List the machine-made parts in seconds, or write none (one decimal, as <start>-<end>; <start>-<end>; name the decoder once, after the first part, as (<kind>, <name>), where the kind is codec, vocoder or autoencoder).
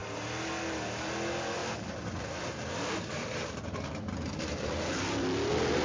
1.6-4.9 (vocoder, BigVGAN v2)